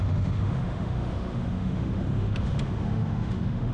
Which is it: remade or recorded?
remade